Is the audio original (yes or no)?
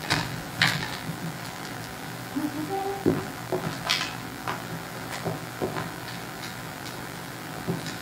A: no